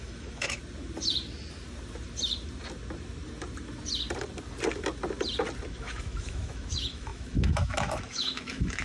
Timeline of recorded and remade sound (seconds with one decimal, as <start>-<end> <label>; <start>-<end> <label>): 0.0-0.6 remade; 0.6-5.7 recorded; 5.7-8.8 remade